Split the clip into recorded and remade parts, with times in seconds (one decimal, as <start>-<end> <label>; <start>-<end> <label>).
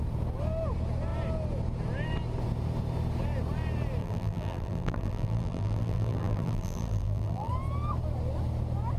0.0-4.0 recorded; 4.0-7.5 remade; 7.5-9.0 recorded